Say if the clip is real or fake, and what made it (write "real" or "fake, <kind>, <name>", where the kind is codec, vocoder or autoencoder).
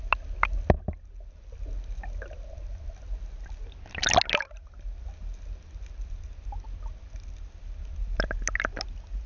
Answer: real